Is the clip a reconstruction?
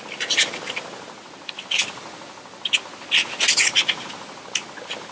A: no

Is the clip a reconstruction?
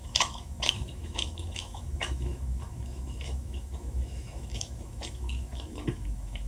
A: yes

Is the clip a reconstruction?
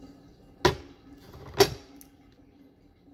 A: no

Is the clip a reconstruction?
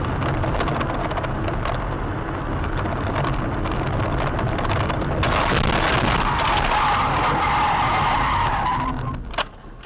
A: no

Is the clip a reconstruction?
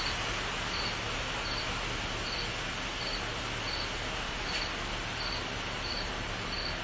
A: no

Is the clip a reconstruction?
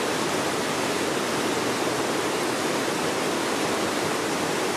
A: no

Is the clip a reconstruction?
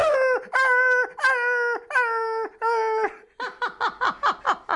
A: no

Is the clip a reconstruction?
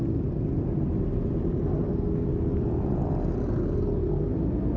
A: no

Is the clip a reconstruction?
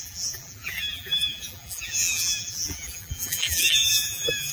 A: yes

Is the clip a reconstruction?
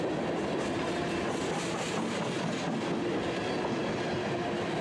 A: no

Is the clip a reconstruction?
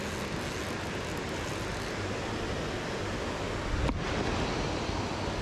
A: no